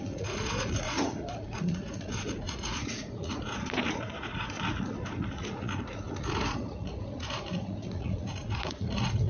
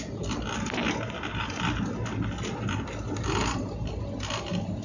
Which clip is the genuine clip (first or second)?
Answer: second